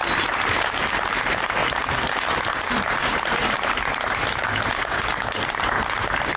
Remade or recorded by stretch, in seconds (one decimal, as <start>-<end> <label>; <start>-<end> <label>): 0.0-0.7 recorded; 0.7-1.6 remade; 1.6-2.5 recorded; 2.5-5.1 remade; 5.1-6.0 recorded; 6.0-6.4 remade